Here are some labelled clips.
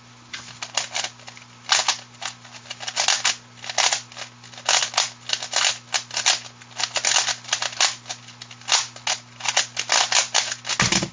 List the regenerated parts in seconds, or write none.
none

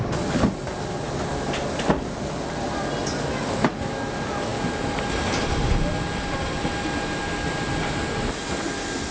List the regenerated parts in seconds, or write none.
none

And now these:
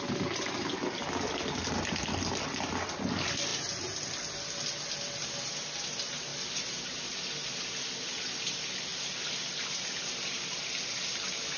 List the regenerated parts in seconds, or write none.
3.5-4.1 (vocoder, BigVGAN v2)

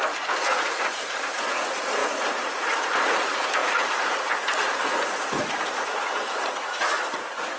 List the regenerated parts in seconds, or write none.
0.0-7.6 (vocoder, Vocos)

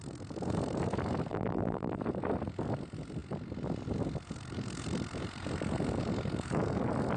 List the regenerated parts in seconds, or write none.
1.3-2.0 (vocoder, BigVGAN v2)

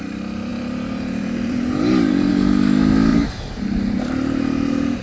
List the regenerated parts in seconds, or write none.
0.5-2.3 (vocoder, BigVGAN v2); 3.1-4.0

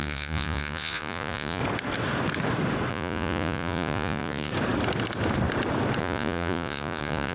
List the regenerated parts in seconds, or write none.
0.0-1.6 (vocoder, Vocos); 2.9-4.5; 6.0-7.3